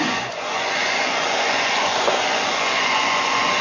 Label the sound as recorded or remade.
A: remade